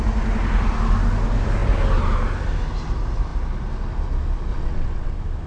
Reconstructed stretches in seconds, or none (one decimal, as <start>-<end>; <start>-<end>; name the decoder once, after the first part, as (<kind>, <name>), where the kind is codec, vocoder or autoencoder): 4.5-5.1 (vocoder, WaveNeXt)